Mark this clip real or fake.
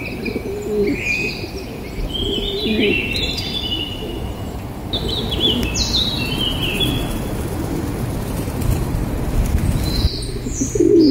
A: real